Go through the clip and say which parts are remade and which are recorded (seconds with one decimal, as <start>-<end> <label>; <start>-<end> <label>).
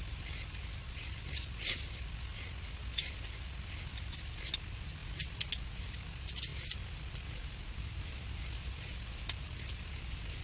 0.0-2.3 remade; 2.3-3.0 recorded; 3.0-5.0 remade; 5.0-5.9 recorded; 5.9-10.4 remade